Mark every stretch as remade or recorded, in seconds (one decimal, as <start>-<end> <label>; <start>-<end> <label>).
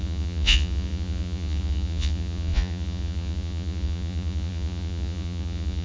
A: 0.0-5.8 remade